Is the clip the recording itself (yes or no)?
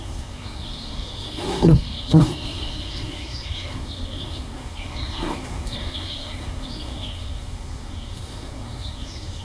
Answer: no